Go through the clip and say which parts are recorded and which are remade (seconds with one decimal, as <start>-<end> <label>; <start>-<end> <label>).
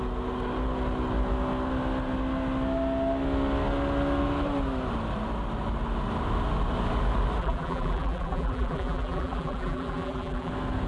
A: 0.0-7.4 recorded; 7.4-10.5 remade; 10.5-10.9 recorded